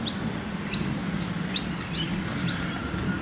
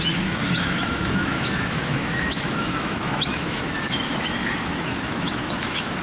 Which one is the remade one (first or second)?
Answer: second